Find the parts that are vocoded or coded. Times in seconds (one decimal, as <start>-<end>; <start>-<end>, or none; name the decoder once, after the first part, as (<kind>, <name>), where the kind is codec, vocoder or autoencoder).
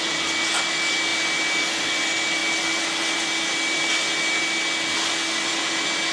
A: none